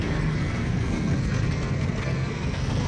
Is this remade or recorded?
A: remade